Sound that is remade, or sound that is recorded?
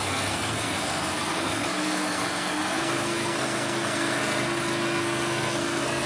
remade